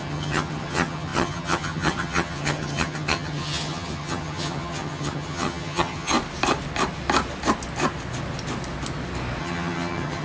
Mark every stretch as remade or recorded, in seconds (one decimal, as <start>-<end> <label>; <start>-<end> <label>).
0.0-6.1 remade; 6.1-9.4 recorded; 9.4-10.2 remade